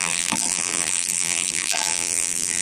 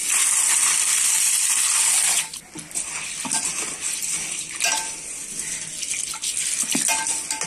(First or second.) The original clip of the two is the second